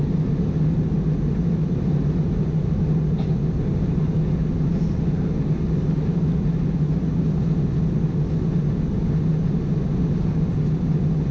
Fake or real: real